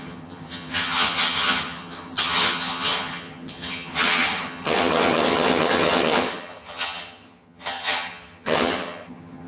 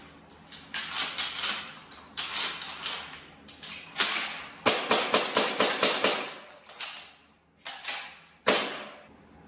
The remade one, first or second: first